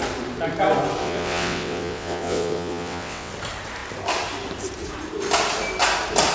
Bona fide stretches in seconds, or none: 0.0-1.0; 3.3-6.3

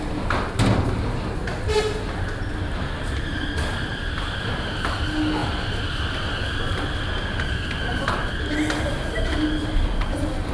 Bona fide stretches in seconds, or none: 0.0-10.5

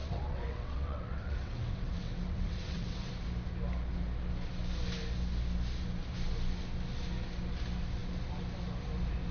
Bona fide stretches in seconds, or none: 3.1-9.3

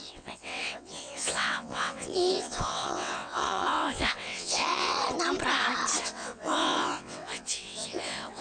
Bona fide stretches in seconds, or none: 5.0-6.0

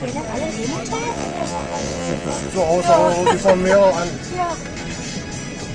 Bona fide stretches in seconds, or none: 0.0-1.1; 2.5-5.7

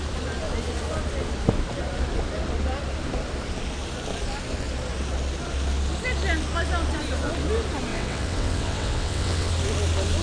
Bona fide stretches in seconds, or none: 0.0-7.9; 9.5-10.2

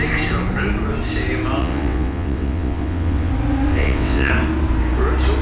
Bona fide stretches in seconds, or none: 0.0-1.6; 3.3-3.7; 4.3-5.4

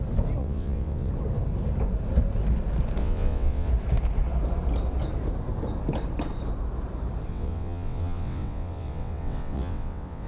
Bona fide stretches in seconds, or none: 0.0-0.4; 1.1-3.0; 3.7-7.3